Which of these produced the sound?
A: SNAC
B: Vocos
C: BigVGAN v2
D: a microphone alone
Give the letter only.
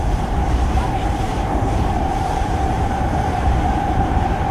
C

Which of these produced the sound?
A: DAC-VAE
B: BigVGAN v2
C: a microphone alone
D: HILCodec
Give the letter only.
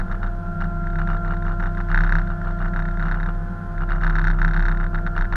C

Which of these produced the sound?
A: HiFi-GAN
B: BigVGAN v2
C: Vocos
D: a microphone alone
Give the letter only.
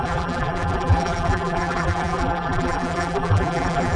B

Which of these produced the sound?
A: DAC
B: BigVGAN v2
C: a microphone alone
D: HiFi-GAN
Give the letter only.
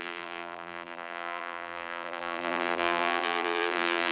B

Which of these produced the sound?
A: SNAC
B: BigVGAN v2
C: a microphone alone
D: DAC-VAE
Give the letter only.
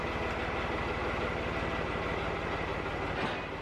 C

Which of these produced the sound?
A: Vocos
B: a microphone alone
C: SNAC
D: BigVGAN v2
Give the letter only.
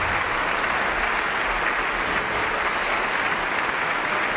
B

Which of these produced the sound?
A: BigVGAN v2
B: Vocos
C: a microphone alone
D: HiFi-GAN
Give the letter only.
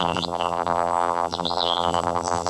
A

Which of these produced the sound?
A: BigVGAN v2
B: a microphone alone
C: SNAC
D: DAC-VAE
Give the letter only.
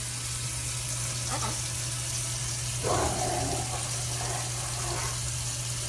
B